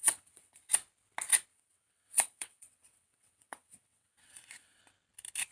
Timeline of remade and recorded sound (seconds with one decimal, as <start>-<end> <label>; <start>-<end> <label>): 0.0-0.7 remade; 0.7-1.5 recorded; 1.5-4.8 remade; 4.8-5.5 recorded